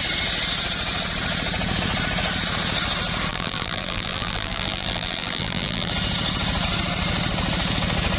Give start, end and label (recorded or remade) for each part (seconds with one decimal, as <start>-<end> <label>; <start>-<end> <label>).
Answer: 0.0-3.3 recorded; 3.3-5.9 remade; 5.9-8.2 recorded